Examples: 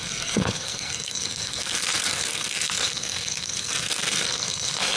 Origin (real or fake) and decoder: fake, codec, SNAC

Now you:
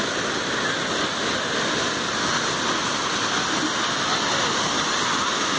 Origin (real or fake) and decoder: real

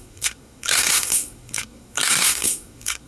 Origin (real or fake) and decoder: fake, codec, SNAC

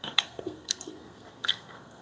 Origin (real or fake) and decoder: fake, codec, SNAC